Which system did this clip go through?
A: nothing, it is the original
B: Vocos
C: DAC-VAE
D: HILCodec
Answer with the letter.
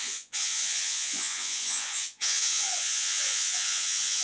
B